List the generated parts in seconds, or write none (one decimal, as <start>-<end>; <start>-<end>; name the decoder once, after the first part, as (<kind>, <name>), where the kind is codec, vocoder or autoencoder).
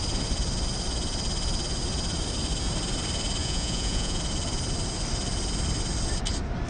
3.4-4.2 (vocoder, Vocos)